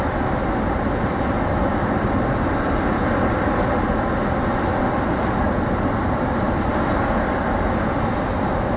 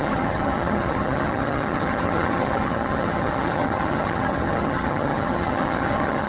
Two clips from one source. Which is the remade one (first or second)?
second